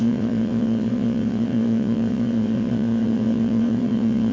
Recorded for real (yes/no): no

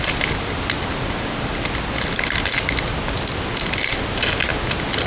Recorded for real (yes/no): yes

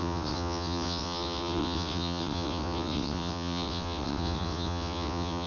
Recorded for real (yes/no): no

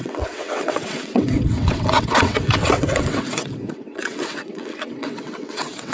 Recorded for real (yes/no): no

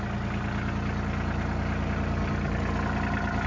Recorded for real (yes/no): yes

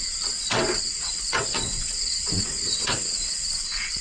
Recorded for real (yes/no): no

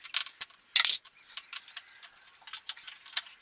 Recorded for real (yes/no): yes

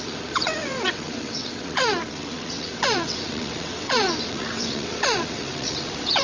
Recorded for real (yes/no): no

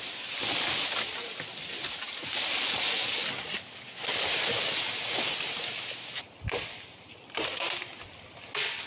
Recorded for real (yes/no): yes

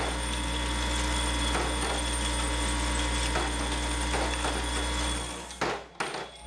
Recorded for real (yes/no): yes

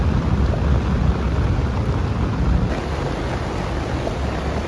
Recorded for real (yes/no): yes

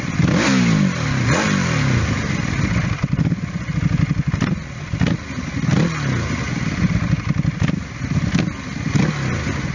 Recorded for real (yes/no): yes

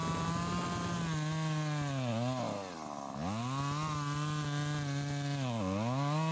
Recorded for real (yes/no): yes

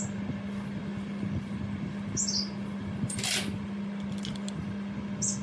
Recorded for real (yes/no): yes